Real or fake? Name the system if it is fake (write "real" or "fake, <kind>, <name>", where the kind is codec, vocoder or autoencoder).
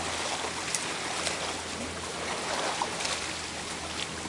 real